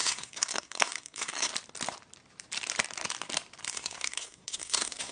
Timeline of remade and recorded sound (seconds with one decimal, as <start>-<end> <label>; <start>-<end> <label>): 0.0-1.5 remade; 1.5-3.7 recorded; 3.7-5.1 remade